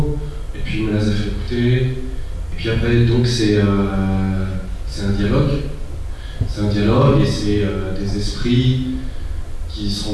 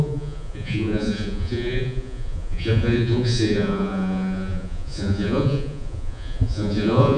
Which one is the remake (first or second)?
second